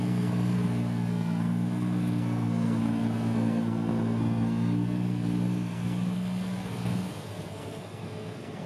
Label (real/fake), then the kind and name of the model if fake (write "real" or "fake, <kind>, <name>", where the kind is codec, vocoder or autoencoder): fake, codec, SNAC